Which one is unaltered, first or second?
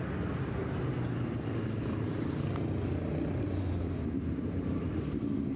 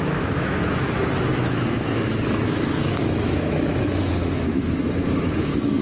first